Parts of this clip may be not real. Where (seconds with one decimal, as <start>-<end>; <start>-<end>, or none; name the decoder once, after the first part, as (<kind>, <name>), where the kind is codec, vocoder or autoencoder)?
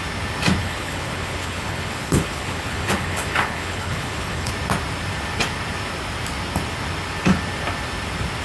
0.6-4.5 (codec, HILCodec)